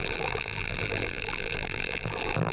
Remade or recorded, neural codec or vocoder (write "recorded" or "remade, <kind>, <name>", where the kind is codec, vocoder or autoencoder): remade, vocoder, BigVGAN v2